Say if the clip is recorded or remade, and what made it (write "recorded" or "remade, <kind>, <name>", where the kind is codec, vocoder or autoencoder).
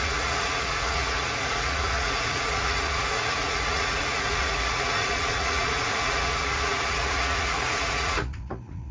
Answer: remade, vocoder, Vocos